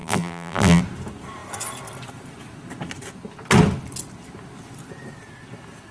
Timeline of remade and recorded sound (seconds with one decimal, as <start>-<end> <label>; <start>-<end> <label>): 0.0-0.8 remade; 0.8-5.9 recorded